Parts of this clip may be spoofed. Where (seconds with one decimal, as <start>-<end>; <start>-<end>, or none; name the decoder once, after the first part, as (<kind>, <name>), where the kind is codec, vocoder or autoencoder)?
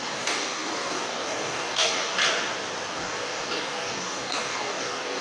0.0-2.2 (codec, DAC); 2.9-5.2